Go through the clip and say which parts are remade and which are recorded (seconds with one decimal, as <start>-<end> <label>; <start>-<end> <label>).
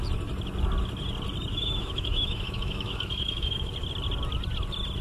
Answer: 0.0-1.5 recorded; 1.5-3.7 remade; 3.7-5.0 recorded